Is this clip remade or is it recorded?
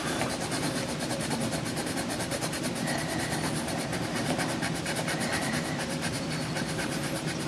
remade